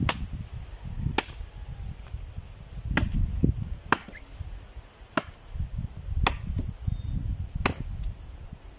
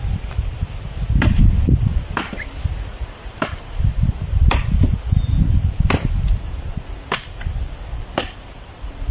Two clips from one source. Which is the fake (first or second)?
second